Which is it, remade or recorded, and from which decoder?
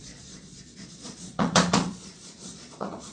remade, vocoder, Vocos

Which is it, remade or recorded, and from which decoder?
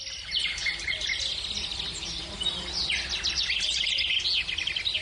recorded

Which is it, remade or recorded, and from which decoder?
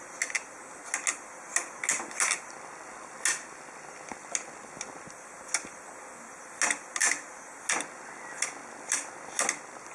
recorded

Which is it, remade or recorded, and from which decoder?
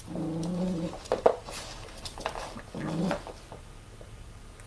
recorded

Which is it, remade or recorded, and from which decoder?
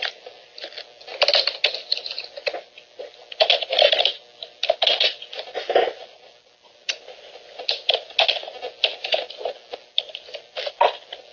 recorded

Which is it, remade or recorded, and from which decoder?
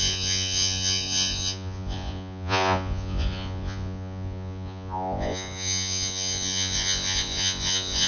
remade, vocoder, Vocos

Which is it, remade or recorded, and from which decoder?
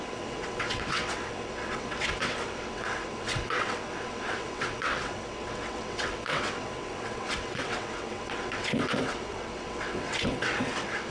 remade, vocoder, WaveNeXt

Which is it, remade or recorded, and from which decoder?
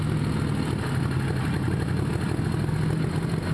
recorded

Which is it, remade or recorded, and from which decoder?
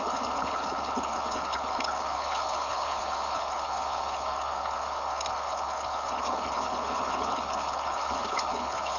remade, codec, HILCodec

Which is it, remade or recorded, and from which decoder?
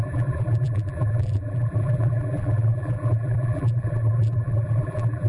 remade, vocoder, BigVGAN v2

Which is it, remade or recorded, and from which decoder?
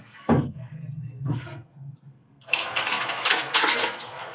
remade, codec, SNAC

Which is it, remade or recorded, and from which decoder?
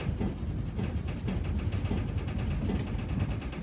recorded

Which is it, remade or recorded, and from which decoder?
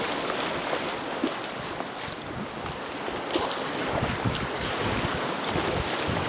recorded